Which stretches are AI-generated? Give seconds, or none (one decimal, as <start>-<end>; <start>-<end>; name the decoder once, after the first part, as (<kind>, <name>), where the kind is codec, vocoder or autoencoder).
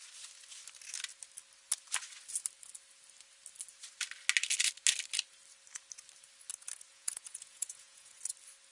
6.9-8.2 (vocoder, Vocos)